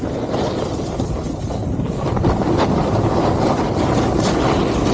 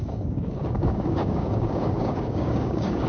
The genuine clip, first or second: first